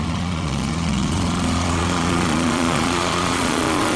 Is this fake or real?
fake